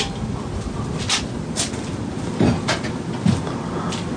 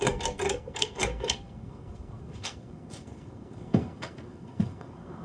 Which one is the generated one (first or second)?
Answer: second